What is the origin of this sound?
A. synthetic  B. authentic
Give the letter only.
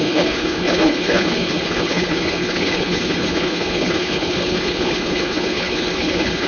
A